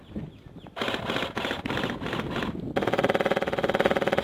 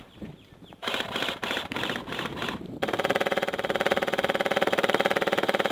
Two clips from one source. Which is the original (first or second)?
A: first